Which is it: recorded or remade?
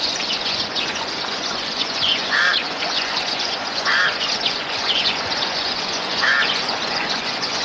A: remade